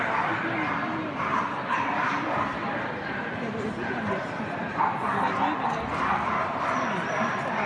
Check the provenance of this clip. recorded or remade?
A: recorded